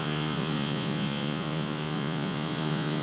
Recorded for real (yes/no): no